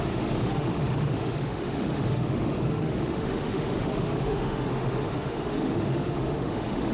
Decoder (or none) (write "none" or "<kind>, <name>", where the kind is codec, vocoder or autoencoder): autoencoder, DAC-VAE